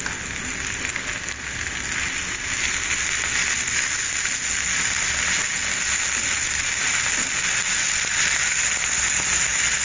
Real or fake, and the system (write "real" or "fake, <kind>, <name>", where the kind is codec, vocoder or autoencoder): real